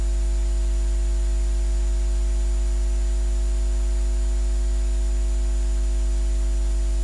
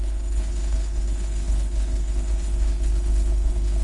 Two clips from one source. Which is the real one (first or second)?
first